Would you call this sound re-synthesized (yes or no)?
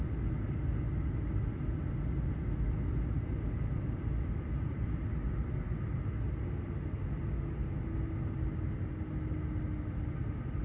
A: no